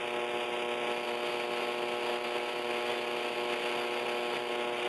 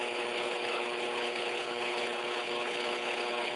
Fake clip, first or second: second